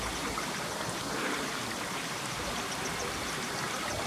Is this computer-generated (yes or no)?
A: no